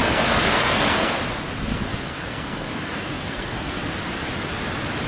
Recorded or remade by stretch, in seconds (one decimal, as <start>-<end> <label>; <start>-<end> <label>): 0.0-1.2 remade; 1.2-1.7 recorded; 1.7-3.8 remade; 3.8-5.1 recorded